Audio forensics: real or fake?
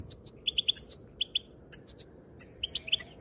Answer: real